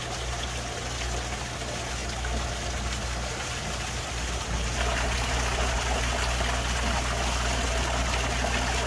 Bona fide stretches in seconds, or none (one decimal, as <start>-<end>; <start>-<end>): 0.0-8.9